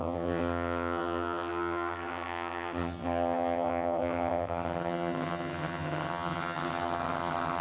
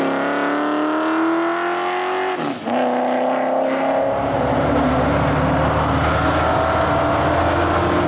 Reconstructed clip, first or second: first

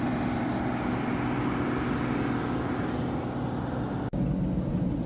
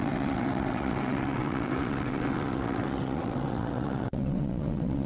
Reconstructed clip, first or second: second